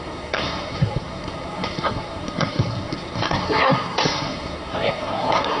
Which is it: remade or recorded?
remade